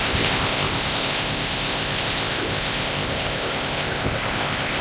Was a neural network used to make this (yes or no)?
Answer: yes